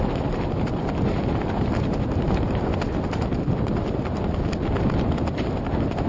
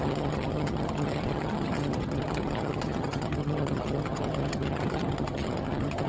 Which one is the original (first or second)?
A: first